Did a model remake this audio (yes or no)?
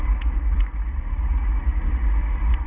no